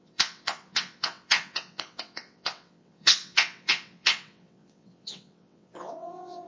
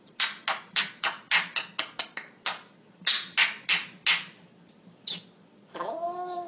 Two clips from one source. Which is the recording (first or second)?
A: second